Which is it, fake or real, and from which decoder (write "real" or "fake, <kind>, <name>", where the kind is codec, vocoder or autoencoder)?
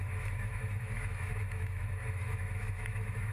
fake, autoencoder, DAC-VAE